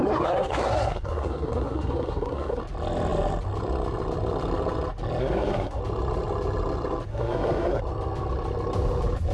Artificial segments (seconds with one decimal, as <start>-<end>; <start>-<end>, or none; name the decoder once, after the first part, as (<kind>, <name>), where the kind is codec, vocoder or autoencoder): 0.0-2.6 (codec, SNAC); 5.2-5.8; 7.1-7.8